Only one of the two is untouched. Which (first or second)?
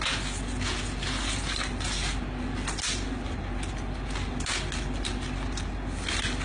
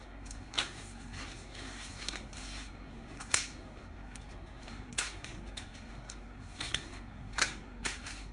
first